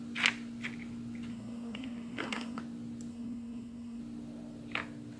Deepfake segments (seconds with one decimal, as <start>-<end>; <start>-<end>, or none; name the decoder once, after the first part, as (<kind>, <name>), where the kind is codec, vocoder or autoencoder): 1.3-2.6 (codec, SNAC); 3.1-4.0